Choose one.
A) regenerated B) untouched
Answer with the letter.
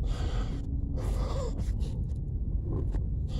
A